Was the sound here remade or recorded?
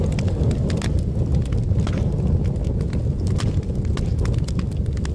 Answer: recorded